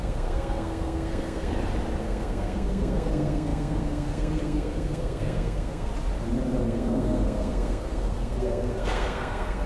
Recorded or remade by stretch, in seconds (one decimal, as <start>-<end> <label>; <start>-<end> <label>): 0.0-1.5 remade; 1.5-2.0 recorded; 2.0-5.9 remade; 5.9-6.6 recorded; 6.6-9.7 remade